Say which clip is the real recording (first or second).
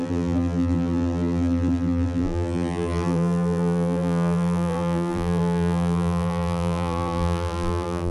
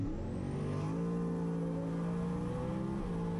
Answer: second